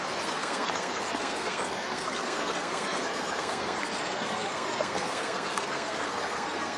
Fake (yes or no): yes